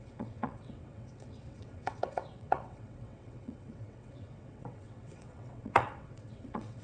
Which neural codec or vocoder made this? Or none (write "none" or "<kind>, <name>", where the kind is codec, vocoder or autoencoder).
vocoder, WaveNeXt